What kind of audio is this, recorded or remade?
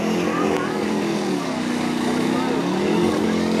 remade